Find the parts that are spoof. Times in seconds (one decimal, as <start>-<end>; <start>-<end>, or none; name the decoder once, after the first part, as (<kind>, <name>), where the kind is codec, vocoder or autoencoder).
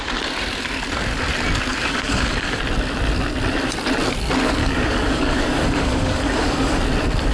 1.7-2.6 (codec, DAC); 4.6-6.8